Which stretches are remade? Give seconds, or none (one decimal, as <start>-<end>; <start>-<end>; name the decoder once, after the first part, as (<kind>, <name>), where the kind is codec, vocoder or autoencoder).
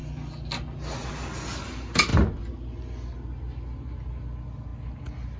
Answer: none